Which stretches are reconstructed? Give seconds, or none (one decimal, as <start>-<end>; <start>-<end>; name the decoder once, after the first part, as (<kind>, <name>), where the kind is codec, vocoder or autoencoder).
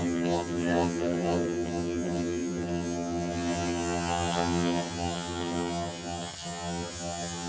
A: 0.0-7.5 (vocoder, HiFi-GAN)